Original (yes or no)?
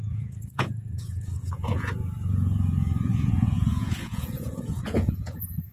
no